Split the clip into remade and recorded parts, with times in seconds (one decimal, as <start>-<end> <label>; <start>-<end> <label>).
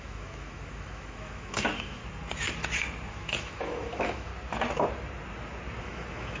0.0-2.0 remade; 2.0-3.1 recorded; 3.1-4.3 remade; 4.3-5.8 recorded; 5.8-6.4 remade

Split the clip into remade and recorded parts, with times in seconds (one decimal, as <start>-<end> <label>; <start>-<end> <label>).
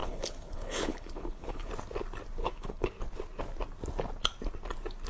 0.0-1.7 remade; 1.7-2.4 recorded; 2.4-2.9 remade; 2.9-5.1 recorded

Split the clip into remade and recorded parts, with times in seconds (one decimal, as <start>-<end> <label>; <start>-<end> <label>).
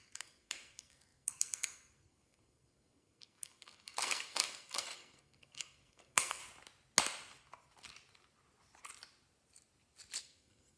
0.0-6.4 remade; 6.4-10.2 recorded; 10.2-10.8 remade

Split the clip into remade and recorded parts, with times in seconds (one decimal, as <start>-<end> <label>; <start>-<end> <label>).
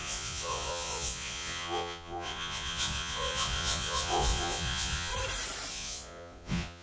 0.0-5.1 remade; 5.1-5.7 recorded; 5.7-6.8 remade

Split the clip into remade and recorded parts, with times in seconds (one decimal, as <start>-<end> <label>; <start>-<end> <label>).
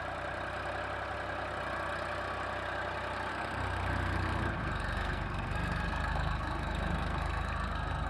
0.0-3.3 recorded; 3.3-8.1 remade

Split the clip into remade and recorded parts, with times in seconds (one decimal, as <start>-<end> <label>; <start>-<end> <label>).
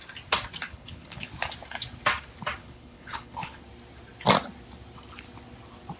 0.0-0.7 recorded; 0.7-1.3 remade; 1.3-2.6 recorded; 2.6-3.6 remade; 3.6-6.0 recorded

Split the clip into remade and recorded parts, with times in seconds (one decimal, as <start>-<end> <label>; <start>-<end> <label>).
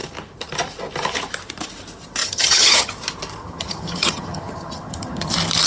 0.0-2.2 recorded; 2.2-2.9 remade; 2.9-3.4 recorded; 3.4-5.3 remade; 5.3-5.7 recorded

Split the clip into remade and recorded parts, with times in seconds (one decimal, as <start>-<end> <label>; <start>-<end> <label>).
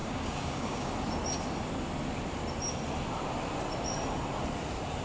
0.0-0.9 remade; 0.9-5.0 recorded